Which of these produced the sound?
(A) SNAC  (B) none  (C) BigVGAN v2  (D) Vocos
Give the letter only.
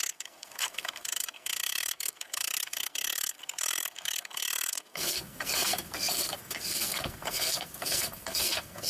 A